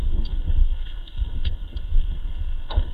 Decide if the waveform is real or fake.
fake